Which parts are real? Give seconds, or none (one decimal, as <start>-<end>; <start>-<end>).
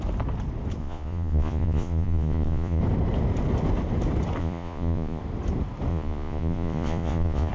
0.0-0.8; 2.8-4.4; 5.2-5.9